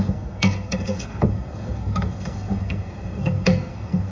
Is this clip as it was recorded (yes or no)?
no